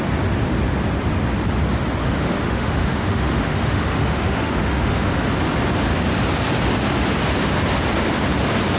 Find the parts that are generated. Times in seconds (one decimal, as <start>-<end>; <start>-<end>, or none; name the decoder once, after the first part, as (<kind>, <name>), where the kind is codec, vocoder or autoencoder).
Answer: 2.0-5.3 (autoencoder, DAC-VAE)